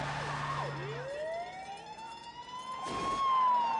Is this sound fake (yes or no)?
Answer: no